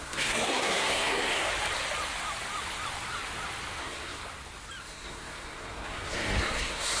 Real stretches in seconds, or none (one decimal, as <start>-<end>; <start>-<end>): 1.5-3.8; 4.2-4.8